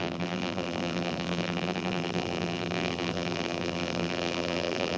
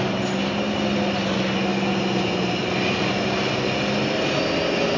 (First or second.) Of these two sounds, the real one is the second